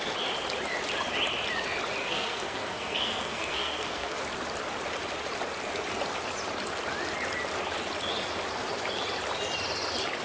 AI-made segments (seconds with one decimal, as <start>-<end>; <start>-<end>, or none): 2.0-4.2